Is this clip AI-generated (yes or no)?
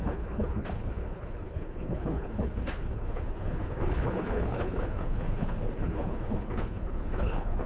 yes